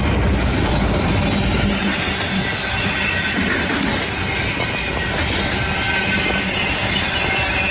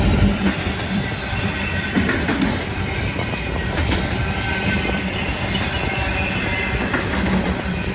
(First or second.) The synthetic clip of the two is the second